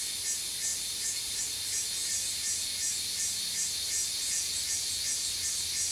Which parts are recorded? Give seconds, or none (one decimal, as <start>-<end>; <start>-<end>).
0.0-0.7; 1.4-5.9